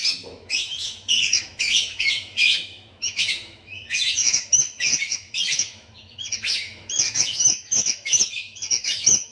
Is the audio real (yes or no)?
no